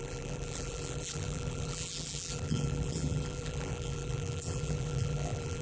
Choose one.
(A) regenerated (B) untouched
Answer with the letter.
A